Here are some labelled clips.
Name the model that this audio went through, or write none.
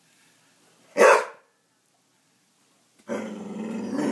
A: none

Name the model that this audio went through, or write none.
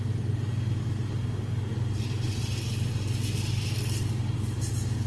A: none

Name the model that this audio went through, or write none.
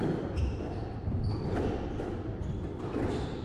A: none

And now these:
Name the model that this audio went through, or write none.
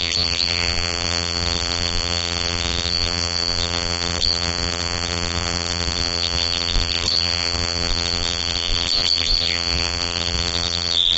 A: vocoder, BigVGAN v2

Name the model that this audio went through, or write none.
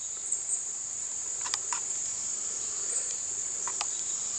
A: vocoder, BigVGAN v2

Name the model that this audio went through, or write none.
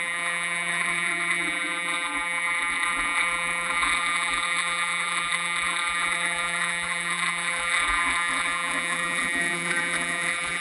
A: vocoder, BigVGAN v2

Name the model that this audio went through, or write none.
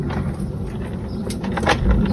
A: none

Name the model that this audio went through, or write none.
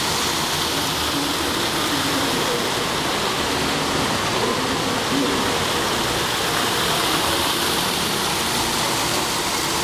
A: vocoder, BigVGAN v2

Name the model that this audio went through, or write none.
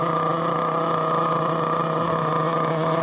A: none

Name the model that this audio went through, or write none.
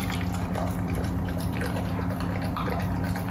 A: vocoder, BigVGAN v2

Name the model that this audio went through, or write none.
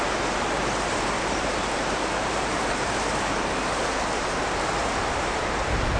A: vocoder, BigVGAN v2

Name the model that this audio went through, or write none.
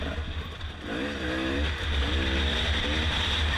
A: none